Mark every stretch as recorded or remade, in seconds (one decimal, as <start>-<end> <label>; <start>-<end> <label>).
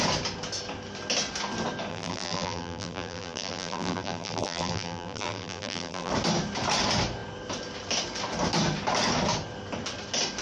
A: 0.0-1.9 recorded; 1.9-6.1 remade; 6.1-10.4 recorded